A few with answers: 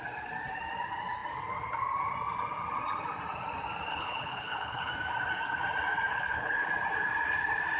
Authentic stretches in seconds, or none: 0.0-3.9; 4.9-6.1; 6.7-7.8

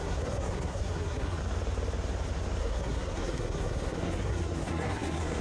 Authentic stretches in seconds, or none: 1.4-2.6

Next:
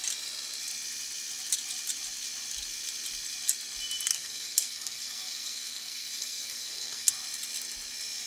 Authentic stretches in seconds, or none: 0.0-4.1; 7.1-8.3

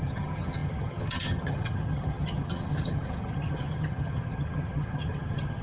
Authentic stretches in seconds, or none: none